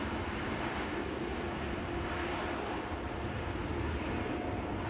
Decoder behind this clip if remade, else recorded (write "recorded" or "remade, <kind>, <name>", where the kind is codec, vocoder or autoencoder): recorded